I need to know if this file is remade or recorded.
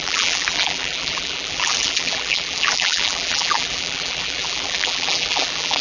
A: remade